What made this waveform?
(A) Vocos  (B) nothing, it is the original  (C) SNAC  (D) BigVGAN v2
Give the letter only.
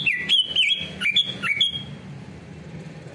B